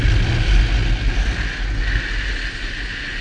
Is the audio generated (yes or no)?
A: no